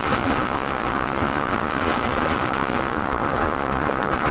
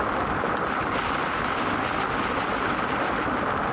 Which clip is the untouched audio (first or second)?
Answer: second